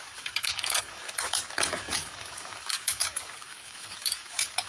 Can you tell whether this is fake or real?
fake